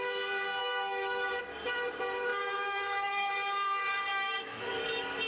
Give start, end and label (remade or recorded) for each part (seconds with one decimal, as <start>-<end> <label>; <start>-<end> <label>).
0.0-0.6 recorded; 0.6-1.3 remade; 1.3-2.3 recorded; 2.3-3.3 remade; 3.3-4.1 recorded; 4.1-4.7 remade; 4.7-5.3 recorded